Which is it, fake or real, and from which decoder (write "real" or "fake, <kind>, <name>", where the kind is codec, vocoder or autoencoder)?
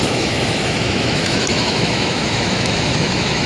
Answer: fake, autoencoder, DAC-VAE